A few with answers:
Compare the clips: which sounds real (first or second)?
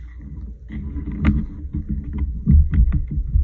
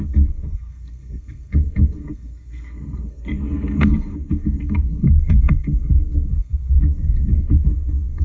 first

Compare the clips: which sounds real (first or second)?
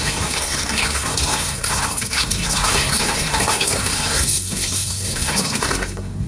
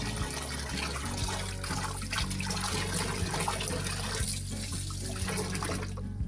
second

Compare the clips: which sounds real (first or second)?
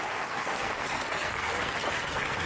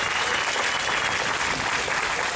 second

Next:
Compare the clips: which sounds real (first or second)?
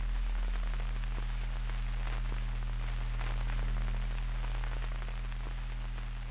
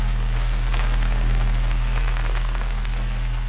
first